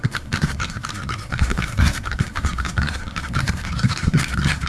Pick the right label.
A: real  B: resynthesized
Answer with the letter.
B